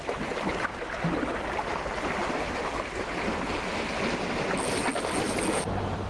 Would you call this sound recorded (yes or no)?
yes